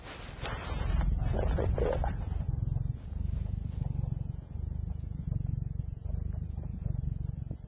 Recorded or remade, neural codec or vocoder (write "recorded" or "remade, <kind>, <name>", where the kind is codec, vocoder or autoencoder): recorded